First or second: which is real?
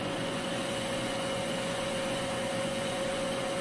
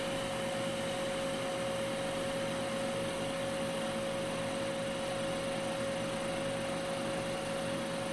second